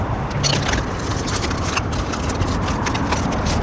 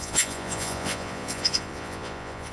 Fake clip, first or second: second